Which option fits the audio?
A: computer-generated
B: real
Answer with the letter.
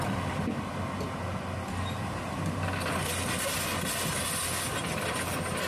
B